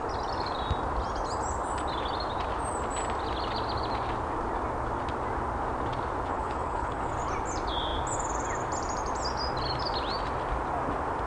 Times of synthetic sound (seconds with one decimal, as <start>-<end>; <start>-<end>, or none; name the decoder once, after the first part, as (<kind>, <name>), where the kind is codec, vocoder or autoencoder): 6.3-7.1 (codec, HILCodec)